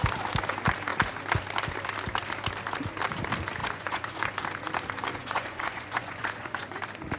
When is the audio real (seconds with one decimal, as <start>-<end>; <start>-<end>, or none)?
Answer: 0.0-3.6; 4.4-5.1; 6.8-7.2